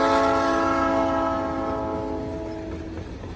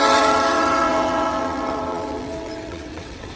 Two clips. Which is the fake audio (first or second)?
second